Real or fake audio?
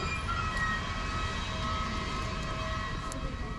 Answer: real